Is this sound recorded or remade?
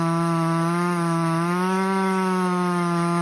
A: remade